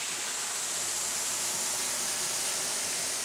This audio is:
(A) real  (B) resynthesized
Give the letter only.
A